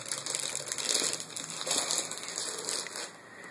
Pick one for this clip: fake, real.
real